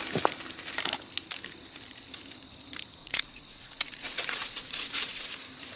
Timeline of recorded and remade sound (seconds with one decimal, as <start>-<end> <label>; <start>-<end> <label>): 0.0-3.0 recorded; 3.0-5.3 remade; 5.3-5.8 recorded

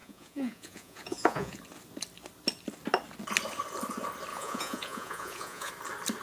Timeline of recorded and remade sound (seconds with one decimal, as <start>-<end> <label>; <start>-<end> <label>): 0.0-1.6 remade; 1.6-4.3 recorded; 4.3-5.7 remade; 5.7-6.2 recorded

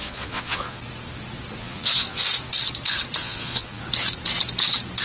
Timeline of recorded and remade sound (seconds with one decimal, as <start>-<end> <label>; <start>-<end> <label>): 0.0-0.8 remade; 0.8-1.6 recorded; 1.6-2.3 remade; 2.3-3.2 recorded; 3.2-3.8 remade; 3.8-5.0 recorded

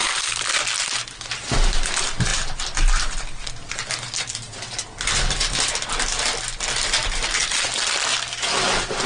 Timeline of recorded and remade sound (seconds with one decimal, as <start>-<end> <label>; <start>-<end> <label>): 0.0-9.1 recorded

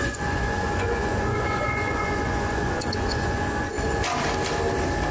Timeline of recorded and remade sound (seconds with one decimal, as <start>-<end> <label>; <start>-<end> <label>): 0.0-4.0 remade; 4.0-5.1 recorded

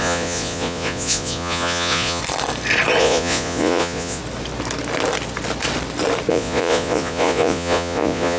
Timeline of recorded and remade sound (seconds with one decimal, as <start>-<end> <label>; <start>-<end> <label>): 0.0-2.2 remade; 2.2-3.0 recorded; 3.0-4.2 remade; 4.2-6.3 recorded; 6.3-8.4 remade

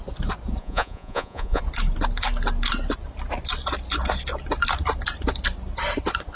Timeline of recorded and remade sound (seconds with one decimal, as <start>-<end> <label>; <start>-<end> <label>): 0.0-0.6 recorded; 0.6-1.6 remade; 1.6-6.4 recorded